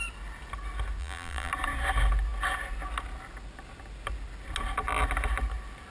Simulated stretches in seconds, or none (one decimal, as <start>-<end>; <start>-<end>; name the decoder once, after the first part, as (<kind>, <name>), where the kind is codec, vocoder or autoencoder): 1.0-1.5 (vocoder, BigVGAN v2)